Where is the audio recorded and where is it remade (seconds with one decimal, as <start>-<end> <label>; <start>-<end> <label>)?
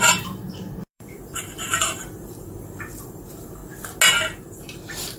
0.0-3.6 remade; 3.6-4.5 recorded; 4.5-5.2 remade